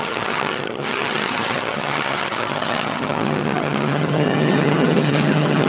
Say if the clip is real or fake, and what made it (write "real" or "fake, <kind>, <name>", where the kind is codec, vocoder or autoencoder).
fake, vocoder, HiFi-GAN